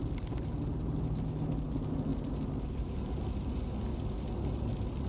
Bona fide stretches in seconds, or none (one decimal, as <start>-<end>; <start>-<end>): 0.0-5.1